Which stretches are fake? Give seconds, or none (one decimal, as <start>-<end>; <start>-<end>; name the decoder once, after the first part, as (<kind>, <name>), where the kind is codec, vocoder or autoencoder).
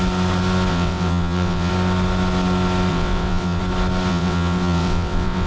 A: 0.7-1.7 (vocoder, WaveNeXt); 2.9-3.6; 4.1-5.5